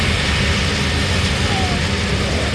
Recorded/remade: recorded